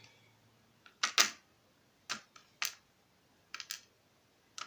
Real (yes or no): yes